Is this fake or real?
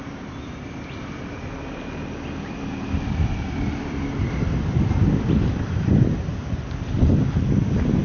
real